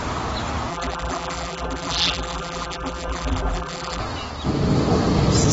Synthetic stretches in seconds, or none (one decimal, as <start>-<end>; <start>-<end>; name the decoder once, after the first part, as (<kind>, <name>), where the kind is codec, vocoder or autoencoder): 0.7-4.0 (vocoder, BigVGAN v2)